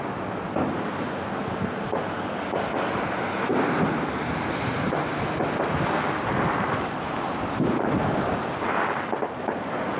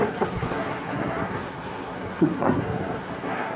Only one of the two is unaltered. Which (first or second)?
first